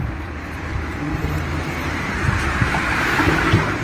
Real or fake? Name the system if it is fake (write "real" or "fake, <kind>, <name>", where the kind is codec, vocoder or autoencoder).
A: fake, vocoder, BigVGAN v2